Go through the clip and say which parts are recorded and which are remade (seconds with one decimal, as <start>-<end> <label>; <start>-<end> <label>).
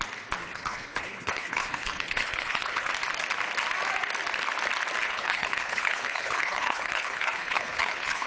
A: 0.0-0.4 recorded; 0.4-2.9 remade; 2.9-5.0 recorded; 5.0-8.3 remade